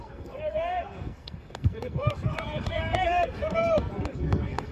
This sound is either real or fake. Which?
fake